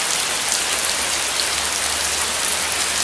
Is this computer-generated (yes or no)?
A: no